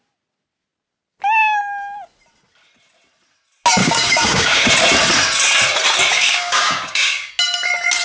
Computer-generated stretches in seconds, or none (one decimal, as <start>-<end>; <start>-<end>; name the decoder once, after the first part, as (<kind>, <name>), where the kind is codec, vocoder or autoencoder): 3.8-4.7 (codec, DAC); 6.1-7.3